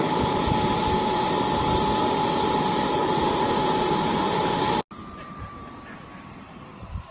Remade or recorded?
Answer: recorded